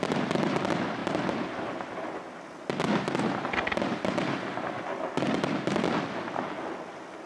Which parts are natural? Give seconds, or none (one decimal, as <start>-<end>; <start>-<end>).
0.0-7.3